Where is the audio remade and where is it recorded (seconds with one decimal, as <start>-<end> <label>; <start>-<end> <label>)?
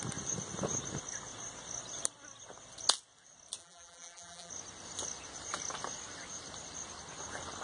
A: 0.0-3.6 recorded; 3.6-4.5 remade; 4.5-7.6 recorded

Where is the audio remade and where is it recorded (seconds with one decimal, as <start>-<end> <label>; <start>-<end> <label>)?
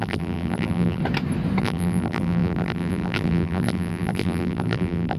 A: 0.0-1.0 remade; 1.0-1.6 recorded; 1.6-5.2 remade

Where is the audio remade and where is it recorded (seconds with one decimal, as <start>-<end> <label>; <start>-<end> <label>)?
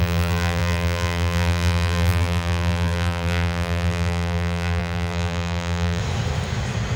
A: 0.0-6.0 remade; 6.0-7.0 recorded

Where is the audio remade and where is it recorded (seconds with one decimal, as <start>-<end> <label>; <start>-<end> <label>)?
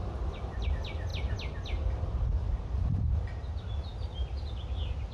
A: 0.0-0.7 remade; 0.7-5.1 recorded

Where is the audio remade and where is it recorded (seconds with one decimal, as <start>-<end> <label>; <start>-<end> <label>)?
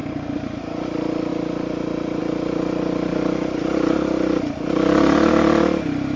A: 0.0-6.2 recorded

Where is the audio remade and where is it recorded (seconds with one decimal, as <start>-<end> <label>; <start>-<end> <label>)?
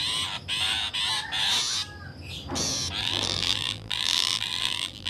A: 0.0-3.0 recorded; 3.0-5.1 remade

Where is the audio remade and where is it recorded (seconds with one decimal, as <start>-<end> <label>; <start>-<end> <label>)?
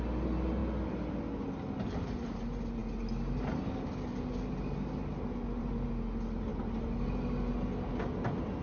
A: 0.0-4.1 recorded; 4.1-5.9 remade; 5.9-8.6 recorded